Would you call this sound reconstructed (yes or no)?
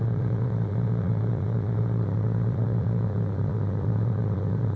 yes